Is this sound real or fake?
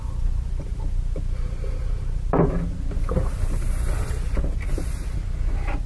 real